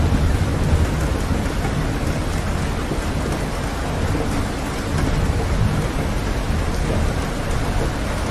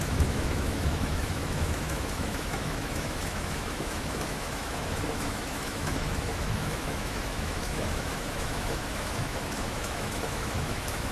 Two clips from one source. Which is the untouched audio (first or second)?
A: first